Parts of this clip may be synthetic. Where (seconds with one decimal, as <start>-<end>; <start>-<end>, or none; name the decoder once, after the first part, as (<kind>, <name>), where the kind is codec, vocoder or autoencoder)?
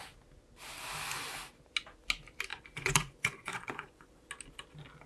2.5-4.2 (vocoder, Vocos)